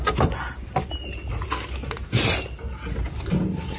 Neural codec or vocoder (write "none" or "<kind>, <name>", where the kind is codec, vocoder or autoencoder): none